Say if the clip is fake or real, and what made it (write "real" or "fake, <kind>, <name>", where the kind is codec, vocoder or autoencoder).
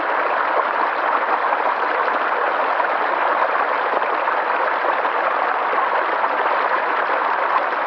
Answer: real